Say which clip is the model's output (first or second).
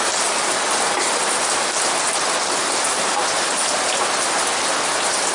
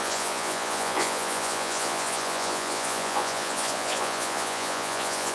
second